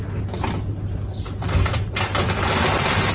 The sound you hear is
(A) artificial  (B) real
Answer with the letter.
B